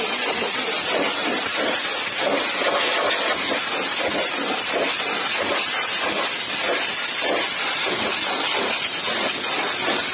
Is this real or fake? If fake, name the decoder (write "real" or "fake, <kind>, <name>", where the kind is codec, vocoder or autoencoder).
real